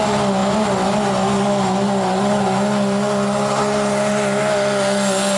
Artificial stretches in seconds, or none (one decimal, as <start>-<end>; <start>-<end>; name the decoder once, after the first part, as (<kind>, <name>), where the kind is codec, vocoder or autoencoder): none